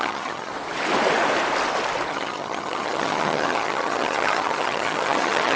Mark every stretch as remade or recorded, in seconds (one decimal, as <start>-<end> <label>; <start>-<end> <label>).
0.0-0.5 remade; 0.5-2.1 recorded; 2.1-5.6 remade

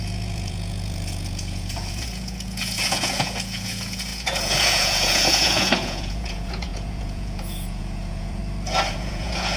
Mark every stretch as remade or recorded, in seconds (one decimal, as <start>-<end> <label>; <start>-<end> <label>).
0.0-8.4 remade; 8.4-8.9 recorded; 8.9-9.6 remade

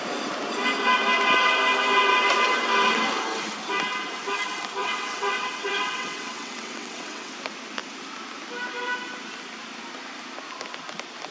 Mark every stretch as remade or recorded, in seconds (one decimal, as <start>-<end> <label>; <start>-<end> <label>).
0.0-4.8 recorded; 4.8-7.3 remade; 7.3-11.3 recorded